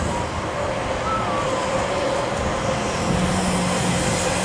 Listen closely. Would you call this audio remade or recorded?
recorded